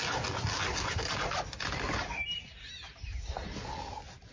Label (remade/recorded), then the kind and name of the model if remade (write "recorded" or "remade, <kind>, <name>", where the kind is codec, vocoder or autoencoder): recorded